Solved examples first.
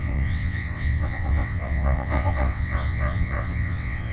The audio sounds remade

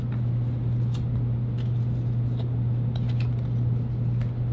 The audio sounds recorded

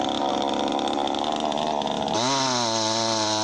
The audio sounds recorded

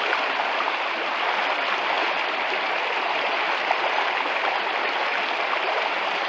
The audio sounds recorded